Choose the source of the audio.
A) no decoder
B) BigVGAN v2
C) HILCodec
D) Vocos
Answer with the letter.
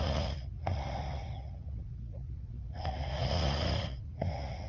D